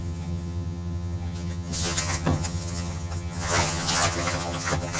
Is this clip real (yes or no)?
no